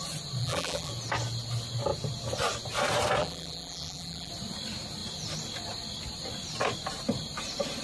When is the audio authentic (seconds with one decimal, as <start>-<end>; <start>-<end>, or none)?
0.0-0.4; 0.9-3.2; 4.3-7.8

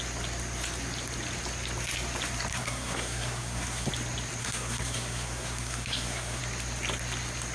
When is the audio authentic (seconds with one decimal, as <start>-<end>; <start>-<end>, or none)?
0.0-2.5; 3.9-4.4; 6.4-7.5